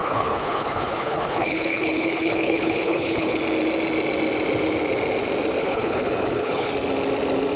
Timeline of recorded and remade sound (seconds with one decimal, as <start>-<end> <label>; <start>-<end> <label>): 0.0-3.4 remade; 3.4-5.6 recorded; 5.6-6.7 remade; 6.7-7.6 recorded